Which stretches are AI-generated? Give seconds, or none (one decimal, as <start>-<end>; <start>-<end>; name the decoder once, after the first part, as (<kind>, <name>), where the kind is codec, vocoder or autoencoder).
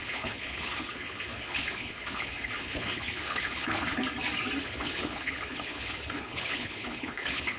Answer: 0.0-4.0 (codec, HILCodec); 4.6-7.6